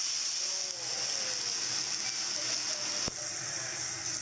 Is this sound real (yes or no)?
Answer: yes